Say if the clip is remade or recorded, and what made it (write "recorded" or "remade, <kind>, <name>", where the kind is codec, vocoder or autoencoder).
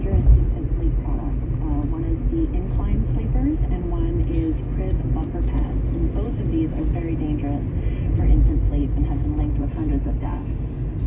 recorded